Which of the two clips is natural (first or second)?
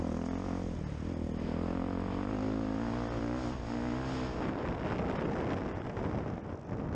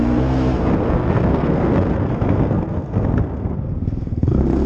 first